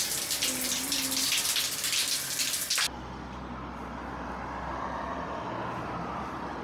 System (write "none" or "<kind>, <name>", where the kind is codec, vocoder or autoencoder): none